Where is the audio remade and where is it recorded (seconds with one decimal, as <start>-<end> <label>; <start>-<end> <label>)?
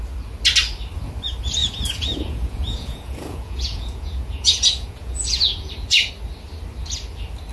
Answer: 0.0-1.6 recorded; 1.6-6.1 remade; 6.1-7.5 recorded